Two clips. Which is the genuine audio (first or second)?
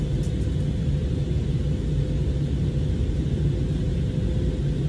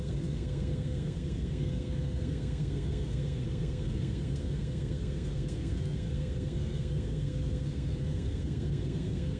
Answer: first